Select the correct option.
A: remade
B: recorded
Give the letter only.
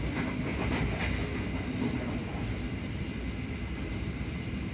B